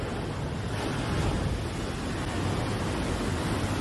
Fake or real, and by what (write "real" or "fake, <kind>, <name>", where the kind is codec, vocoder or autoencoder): real